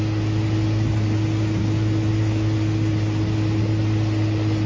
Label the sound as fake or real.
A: real